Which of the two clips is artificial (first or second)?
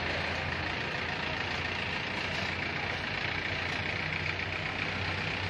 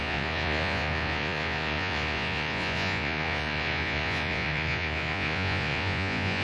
second